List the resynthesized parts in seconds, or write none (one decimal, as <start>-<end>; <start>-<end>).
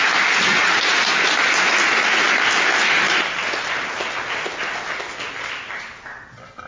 0.5-1.0